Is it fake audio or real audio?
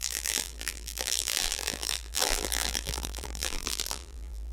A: fake